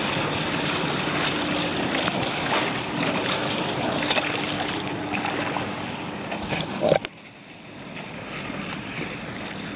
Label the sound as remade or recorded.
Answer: recorded